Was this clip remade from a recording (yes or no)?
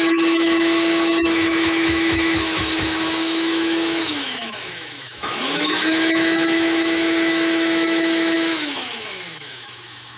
yes